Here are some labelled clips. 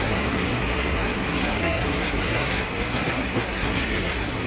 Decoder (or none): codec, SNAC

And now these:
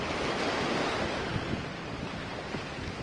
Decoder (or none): none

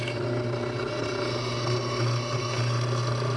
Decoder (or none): none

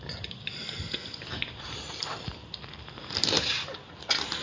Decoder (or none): none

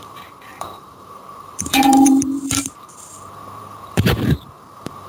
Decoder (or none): vocoder, BigVGAN v2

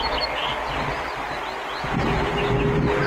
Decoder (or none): none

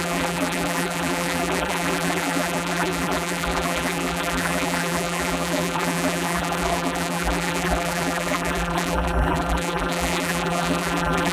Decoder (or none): vocoder, BigVGAN v2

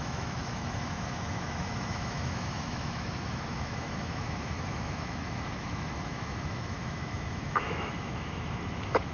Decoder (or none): autoencoder, DAC-VAE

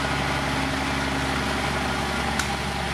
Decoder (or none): none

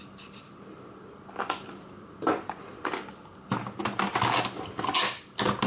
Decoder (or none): none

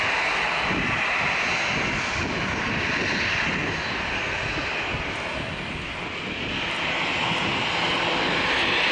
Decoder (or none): none